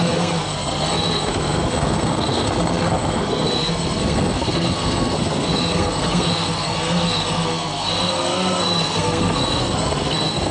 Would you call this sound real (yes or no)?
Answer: no